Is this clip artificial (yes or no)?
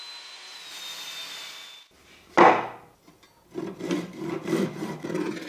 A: no